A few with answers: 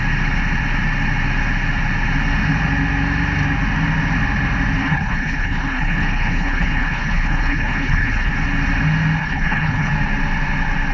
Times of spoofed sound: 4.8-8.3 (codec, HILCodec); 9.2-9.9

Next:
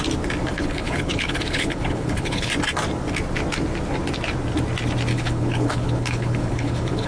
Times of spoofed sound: 0.5-2.5 (codec, HILCodec); 5.1-7.1

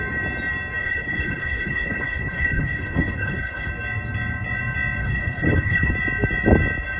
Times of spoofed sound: 0.8-3.7 (codec, HILCodec); 5.0-5.9

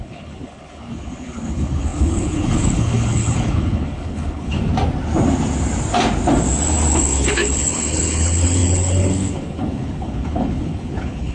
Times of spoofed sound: 0.0-4.7 (codec, HILCodec); 6.9-11.3

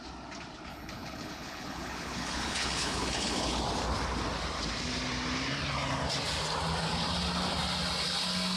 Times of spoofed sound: 0.7-3.6 (codec, HILCodec)

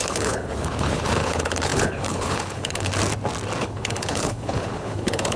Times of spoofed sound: 0.0-2.9 (codec, HILCodec); 3.6-5.4

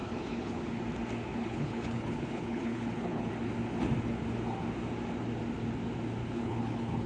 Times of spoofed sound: 0.0-0.8 (codec, HILCodec); 1.3-3.3; 6.2-7.1

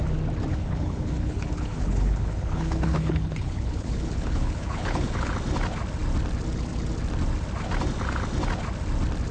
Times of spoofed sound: 0.5-5.3 (codec, HILCodec)